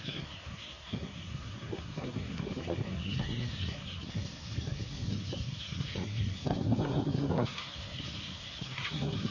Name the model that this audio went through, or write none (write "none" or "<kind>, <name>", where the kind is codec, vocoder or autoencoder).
codec, SNAC